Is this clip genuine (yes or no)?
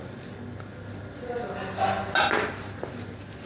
yes